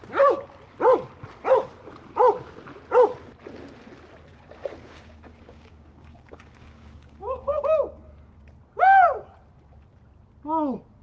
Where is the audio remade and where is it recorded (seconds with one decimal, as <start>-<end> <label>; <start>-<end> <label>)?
0.0-4.3 recorded; 4.3-7.6 remade; 7.6-11.0 recorded